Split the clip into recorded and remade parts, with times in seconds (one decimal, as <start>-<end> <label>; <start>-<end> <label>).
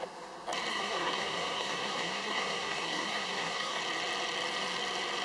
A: 0.0-0.7 recorded; 0.7-3.8 remade; 3.8-5.2 recorded